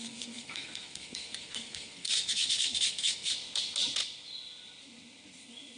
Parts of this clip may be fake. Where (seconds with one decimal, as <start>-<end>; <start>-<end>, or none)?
0.0-3.3